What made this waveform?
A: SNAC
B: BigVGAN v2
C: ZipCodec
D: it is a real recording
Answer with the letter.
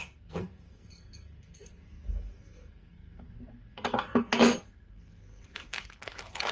A